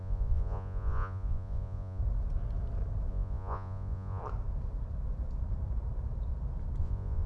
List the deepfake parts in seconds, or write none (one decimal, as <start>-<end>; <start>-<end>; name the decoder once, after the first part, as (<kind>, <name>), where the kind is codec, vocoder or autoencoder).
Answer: 0.0-2.0 (vocoder, Vocos); 3.1-4.2; 6.8-7.3